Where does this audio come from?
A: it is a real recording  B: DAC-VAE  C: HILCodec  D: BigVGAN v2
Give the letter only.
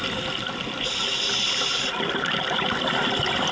A